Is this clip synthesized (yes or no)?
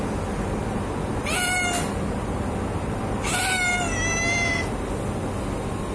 no